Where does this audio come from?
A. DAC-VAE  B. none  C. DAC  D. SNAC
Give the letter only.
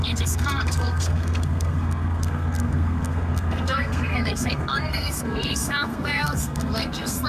D